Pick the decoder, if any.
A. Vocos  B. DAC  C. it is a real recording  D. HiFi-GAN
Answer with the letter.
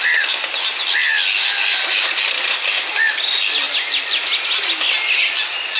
C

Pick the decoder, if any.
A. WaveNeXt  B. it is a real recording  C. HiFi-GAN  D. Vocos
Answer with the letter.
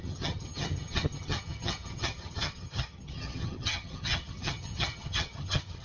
C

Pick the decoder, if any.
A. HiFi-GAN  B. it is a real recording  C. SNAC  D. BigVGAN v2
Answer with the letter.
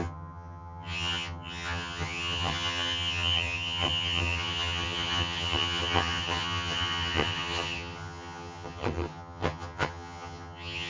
A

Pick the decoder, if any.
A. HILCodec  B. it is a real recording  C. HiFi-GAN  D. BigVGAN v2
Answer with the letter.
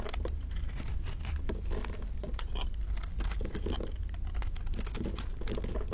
B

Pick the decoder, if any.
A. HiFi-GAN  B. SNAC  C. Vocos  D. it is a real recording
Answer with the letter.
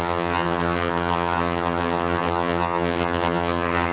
A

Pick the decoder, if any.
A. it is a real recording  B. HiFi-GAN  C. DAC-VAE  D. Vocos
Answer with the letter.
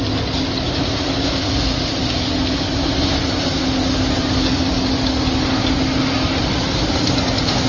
A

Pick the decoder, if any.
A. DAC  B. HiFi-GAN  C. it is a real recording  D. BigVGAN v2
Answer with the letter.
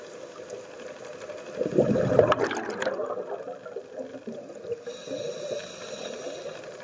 C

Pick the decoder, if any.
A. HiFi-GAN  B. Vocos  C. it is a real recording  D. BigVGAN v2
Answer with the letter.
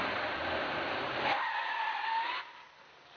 C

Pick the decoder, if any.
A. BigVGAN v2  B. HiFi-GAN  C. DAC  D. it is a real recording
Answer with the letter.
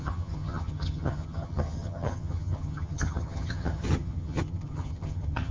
B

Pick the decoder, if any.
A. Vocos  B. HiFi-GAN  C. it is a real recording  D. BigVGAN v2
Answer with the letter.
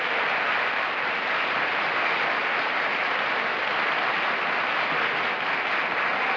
C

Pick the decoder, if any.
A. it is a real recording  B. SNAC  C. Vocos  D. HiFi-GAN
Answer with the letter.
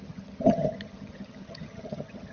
D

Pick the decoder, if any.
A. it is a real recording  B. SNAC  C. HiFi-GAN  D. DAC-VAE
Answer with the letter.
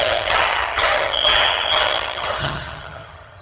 C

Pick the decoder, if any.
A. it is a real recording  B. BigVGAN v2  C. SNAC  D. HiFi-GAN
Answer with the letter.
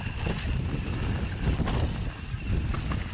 A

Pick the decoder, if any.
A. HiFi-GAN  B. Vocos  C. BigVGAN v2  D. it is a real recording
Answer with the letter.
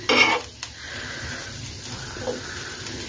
D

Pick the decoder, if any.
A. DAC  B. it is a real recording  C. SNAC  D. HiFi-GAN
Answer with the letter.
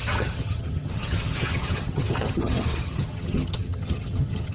D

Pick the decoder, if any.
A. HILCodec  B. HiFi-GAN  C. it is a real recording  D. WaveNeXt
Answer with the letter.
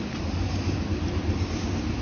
C